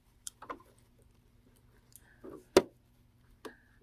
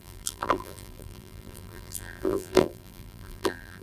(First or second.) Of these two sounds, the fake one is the second